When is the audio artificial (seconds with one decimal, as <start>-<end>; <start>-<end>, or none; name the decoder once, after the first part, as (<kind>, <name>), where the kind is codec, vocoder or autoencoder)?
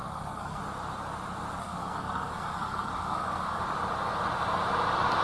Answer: 0.0-0.6 (codec, SNAC); 1.6-3.6